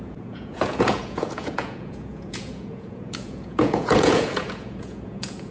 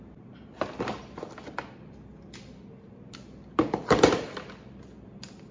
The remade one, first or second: first